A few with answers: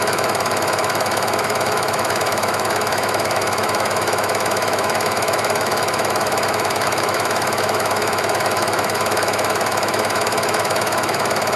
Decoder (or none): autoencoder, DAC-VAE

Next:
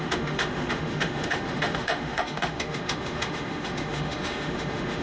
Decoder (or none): autoencoder, DAC-VAE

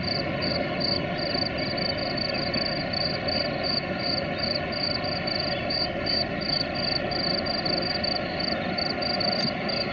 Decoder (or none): none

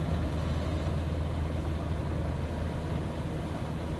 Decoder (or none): none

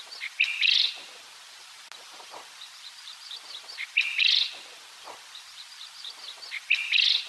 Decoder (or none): none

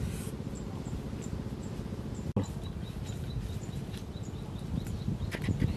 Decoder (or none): none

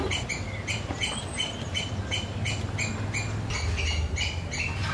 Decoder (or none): none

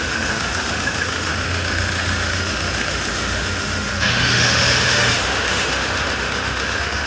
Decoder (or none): autoencoder, DAC-VAE